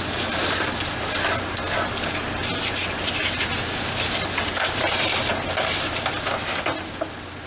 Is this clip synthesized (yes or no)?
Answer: no